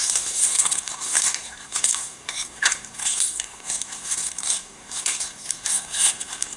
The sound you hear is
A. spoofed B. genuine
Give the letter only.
A